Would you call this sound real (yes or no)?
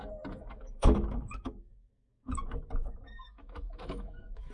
no